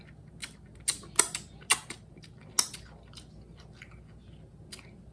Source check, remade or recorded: recorded